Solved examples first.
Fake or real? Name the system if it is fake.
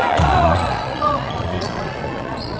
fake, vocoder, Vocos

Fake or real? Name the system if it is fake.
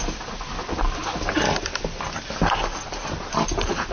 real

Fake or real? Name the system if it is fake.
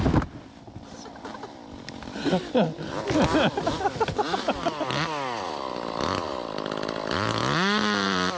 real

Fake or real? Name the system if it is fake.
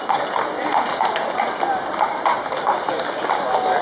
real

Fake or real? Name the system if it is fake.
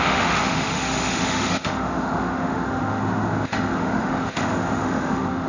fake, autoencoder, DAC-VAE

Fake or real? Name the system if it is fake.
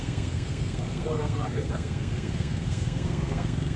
fake, codec, SNAC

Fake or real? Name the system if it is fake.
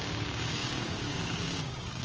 fake, codec, DAC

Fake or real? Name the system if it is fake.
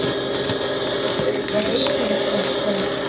real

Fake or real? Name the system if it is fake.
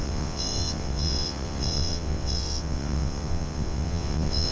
fake, vocoder, WaveNeXt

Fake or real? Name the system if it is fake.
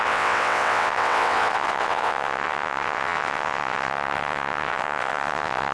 fake, vocoder, WaveNeXt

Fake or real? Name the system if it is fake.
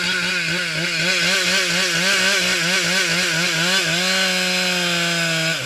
real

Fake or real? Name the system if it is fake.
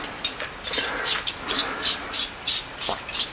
real